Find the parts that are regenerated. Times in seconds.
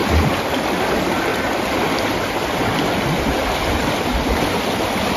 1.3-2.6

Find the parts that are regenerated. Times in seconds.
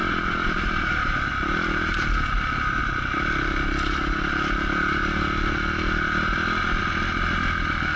0.0-1.3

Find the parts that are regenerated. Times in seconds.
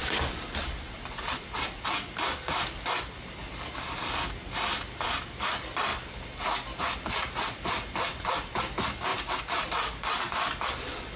none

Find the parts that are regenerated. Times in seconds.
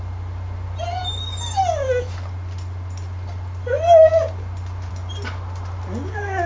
none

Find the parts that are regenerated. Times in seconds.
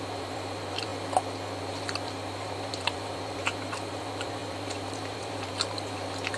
0.0-0.9; 1.6-6.4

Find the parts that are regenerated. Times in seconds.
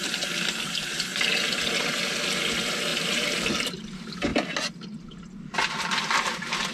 2.9-3.8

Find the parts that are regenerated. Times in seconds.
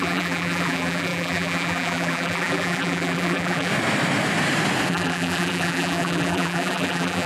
0.0-3.7; 4.9-7.3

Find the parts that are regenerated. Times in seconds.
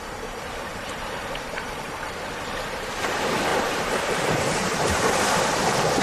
0.7-2.2; 3.5-4.8